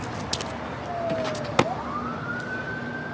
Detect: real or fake real